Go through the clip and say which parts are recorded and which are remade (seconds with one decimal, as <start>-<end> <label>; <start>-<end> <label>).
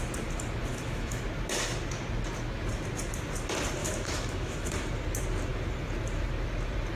0.0-0.7 recorded; 0.7-1.2 remade; 1.2-3.8 recorded; 3.8-4.7 remade; 4.7-7.0 recorded